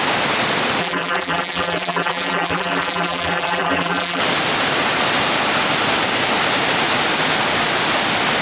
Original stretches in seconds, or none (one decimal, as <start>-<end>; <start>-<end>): 0.0-0.8; 4.2-8.4